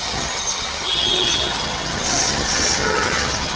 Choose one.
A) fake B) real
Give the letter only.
A